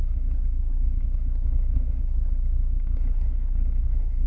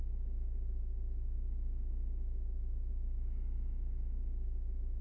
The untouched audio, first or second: second